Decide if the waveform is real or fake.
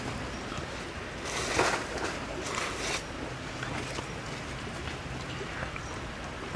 real